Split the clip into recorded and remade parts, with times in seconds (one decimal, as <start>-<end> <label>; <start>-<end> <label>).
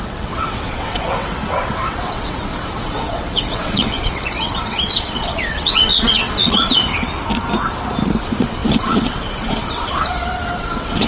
0.0-6.9 remade; 6.9-8.2 recorded; 8.2-11.1 remade